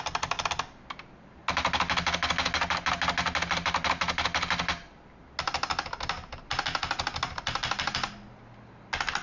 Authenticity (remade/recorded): recorded